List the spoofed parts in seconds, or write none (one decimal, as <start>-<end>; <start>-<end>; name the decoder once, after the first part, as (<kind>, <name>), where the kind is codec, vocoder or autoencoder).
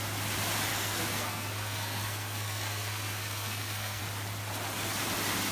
0.7-4.0 (codec, SNAC)